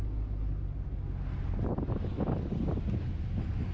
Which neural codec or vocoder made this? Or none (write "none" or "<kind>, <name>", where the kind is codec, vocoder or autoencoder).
none